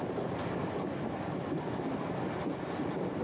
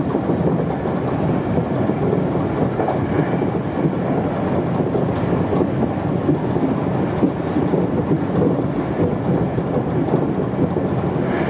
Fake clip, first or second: first